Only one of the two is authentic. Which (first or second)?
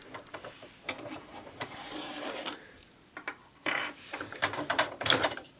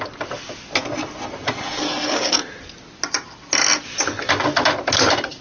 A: second